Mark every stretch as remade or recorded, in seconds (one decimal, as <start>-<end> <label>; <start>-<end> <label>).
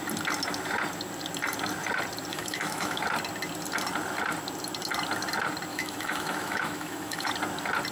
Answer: 0.0-2.3 recorded; 2.3-3.0 remade; 3.0-5.7 recorded; 5.7-7.3 remade; 7.3-7.9 recorded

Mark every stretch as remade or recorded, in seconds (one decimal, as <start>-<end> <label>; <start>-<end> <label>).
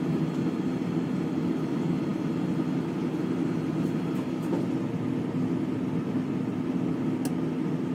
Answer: 0.0-7.9 recorded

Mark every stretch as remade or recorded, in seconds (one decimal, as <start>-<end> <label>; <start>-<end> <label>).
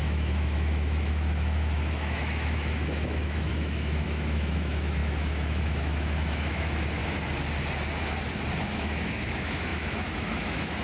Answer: 0.0-7.0 remade; 7.0-8.6 recorded; 8.6-10.8 remade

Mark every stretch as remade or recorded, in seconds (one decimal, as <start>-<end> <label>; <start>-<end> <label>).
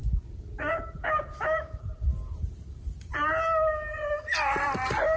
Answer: 0.0-1.3 recorded; 1.3-1.8 remade; 1.8-5.2 recorded